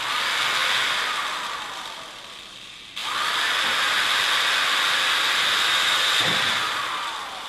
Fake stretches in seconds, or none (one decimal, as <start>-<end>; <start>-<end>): none